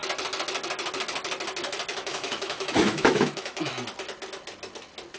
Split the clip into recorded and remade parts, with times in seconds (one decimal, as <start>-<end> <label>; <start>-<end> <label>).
0.0-1.9 recorded; 1.9-3.7 remade; 3.7-5.2 recorded